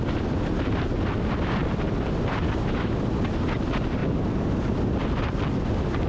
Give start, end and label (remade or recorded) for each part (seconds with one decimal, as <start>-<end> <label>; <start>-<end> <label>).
0.0-1.6 recorded; 1.6-2.9 remade; 2.9-4.0 recorded; 4.0-4.7 remade; 4.7-6.1 recorded